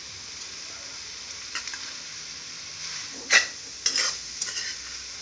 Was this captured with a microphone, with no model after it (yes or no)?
yes